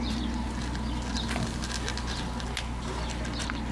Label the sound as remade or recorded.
recorded